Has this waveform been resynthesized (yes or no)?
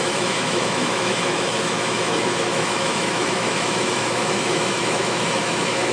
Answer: yes